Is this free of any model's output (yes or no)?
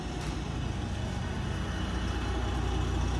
yes